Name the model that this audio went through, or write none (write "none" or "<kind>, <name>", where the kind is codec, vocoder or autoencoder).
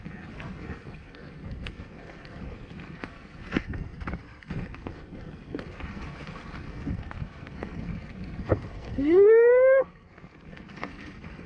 codec, SNAC